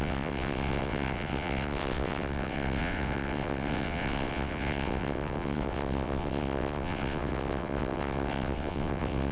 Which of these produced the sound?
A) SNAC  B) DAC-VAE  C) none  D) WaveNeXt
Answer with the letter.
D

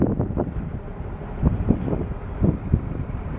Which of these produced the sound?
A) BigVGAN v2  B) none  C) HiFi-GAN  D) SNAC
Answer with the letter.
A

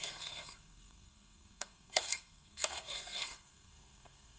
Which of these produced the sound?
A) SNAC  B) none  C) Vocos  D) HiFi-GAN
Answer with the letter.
A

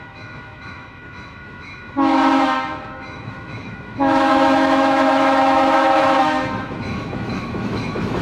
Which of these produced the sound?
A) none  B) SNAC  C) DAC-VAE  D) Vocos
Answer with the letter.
C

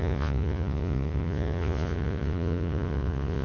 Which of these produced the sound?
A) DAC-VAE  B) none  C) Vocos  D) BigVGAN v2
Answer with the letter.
C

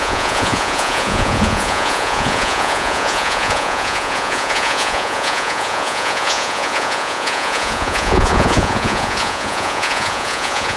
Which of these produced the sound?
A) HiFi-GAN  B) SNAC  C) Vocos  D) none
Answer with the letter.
C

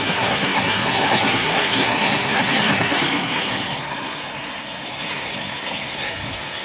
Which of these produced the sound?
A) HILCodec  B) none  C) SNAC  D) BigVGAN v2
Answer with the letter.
C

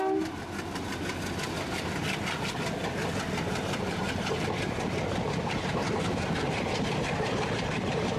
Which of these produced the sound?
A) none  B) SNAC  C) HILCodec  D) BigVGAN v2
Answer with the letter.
A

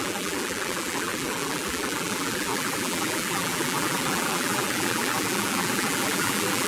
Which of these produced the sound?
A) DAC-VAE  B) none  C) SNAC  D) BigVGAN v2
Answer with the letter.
D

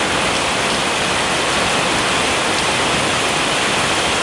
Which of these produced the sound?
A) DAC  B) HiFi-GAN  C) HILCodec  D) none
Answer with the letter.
D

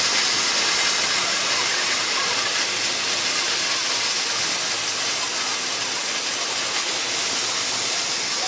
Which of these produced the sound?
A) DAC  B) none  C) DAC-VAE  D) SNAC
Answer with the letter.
B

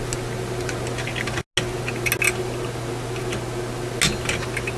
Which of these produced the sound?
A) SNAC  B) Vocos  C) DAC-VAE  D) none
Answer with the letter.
D